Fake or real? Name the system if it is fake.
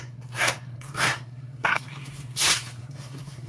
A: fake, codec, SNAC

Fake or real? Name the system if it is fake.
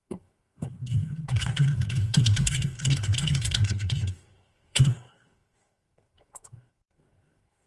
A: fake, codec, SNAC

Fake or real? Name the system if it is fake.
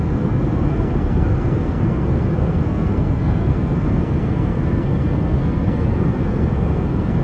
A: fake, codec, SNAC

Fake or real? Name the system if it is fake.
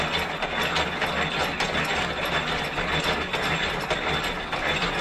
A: real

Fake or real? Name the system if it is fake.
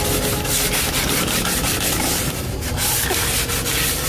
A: real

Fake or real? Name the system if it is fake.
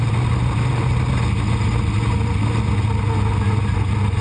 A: real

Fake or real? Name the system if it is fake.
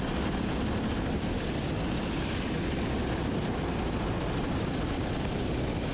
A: real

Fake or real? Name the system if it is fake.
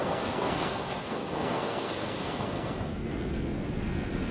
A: fake, codec, SNAC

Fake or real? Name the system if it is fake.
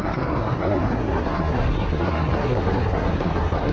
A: fake, codec, SNAC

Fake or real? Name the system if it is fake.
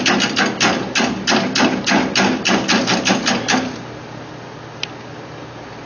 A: real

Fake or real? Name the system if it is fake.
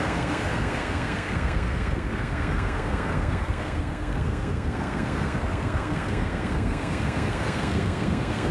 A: fake, codec, SNAC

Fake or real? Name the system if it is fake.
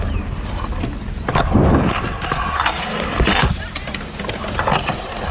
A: real